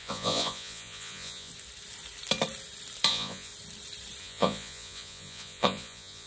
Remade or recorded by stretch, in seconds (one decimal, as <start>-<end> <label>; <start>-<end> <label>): 0.0-1.5 remade; 1.5-3.1 recorded; 3.1-3.5 remade; 3.5-4.2 recorded; 4.2-6.3 remade